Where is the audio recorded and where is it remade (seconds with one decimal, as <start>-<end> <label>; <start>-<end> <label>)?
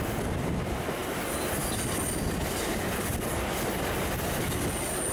0.0-5.1 recorded